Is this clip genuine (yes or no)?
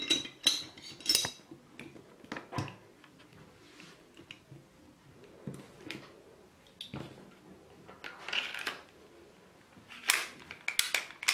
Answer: yes